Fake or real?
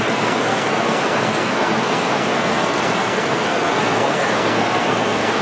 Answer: fake